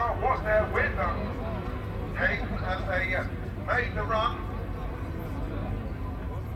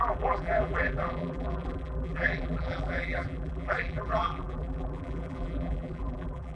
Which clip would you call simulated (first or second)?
second